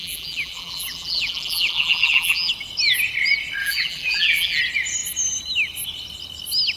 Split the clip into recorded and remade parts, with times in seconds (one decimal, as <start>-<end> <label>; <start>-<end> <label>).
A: 0.0-2.5 remade; 2.5-3.6 recorded; 3.6-4.6 remade; 4.6-6.8 recorded